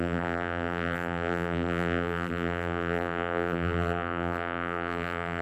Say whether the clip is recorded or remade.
remade